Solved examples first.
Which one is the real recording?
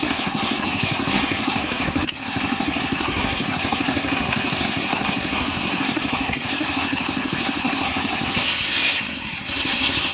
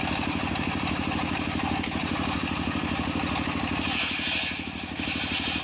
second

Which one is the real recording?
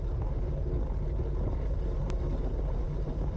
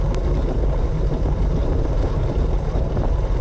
first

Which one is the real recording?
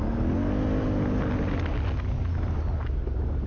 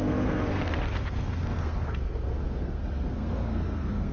first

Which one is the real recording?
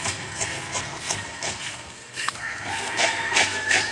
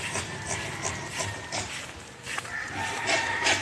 second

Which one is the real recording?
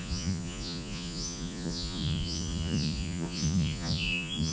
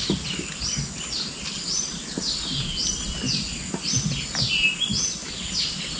second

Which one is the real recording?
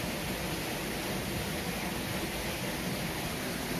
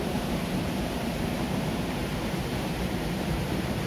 first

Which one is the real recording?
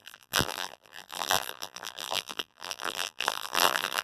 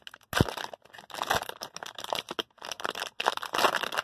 second